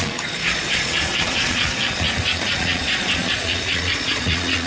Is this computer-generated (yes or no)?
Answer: yes